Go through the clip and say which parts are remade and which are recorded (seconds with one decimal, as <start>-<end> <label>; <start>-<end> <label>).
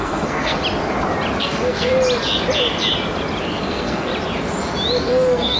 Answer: 0.0-0.6 remade; 0.6-1.4 recorded; 1.4-1.9 remade; 1.9-3.6 recorded; 3.6-4.1 remade; 4.1-5.0 recorded; 5.0-5.6 remade